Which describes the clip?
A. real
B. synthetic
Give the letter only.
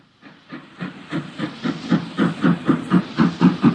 A